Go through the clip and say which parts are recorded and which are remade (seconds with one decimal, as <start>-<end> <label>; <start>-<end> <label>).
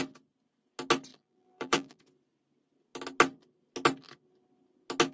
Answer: 0.0-1.1 recorded; 1.1-2.0 remade; 2.0-5.1 recorded